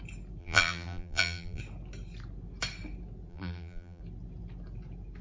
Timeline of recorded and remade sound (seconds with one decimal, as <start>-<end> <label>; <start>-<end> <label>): 0.0-0.4 recorded; 0.4-1.6 remade; 1.6-3.3 recorded; 3.3-4.0 remade; 4.0-5.2 recorded